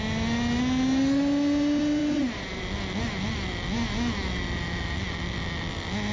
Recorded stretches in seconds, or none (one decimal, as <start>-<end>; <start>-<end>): 0.0-2.0; 2.6-6.1